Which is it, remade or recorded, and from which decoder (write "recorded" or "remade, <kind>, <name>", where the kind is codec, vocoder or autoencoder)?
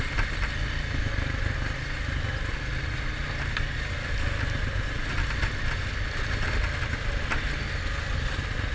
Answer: recorded